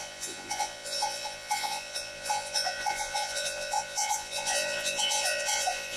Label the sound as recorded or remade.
remade